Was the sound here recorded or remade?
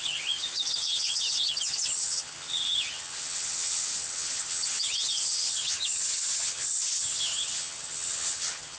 remade